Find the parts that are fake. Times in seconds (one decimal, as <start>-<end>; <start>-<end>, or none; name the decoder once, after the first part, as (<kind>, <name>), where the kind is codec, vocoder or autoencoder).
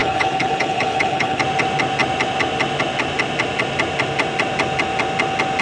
0.0-1.4 (codec, HILCodec)